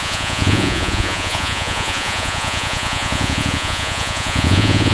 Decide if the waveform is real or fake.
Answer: fake